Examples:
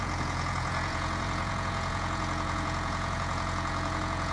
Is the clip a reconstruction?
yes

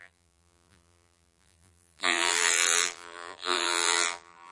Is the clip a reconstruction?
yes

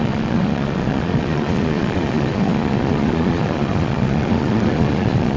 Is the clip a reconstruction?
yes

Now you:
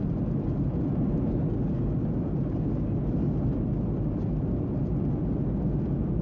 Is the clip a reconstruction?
no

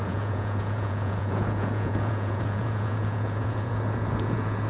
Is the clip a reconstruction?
yes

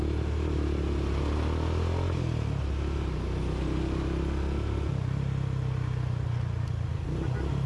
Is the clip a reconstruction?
no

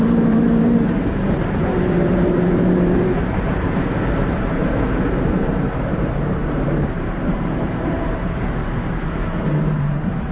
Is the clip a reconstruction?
yes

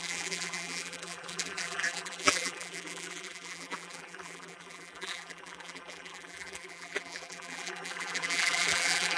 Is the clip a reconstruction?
yes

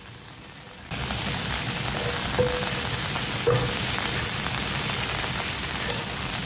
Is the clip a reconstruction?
no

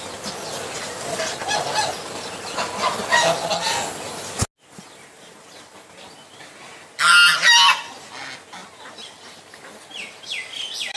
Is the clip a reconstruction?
no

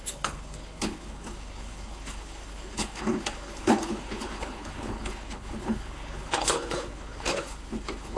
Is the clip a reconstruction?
yes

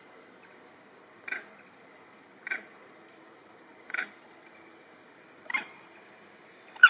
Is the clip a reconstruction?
yes